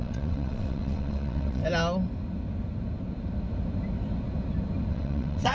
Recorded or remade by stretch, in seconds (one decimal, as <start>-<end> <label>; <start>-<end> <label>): 0.0-1.6 remade; 1.6-4.9 recorded; 4.9-5.5 remade